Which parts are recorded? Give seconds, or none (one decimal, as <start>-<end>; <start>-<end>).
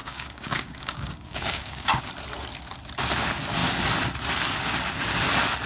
2.1-5.7